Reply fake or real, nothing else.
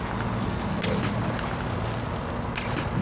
real